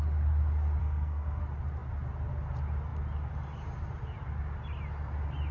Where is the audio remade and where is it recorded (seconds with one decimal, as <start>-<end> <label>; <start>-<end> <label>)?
0.0-0.8 recorded; 0.8-1.4 remade; 1.4-5.5 recorded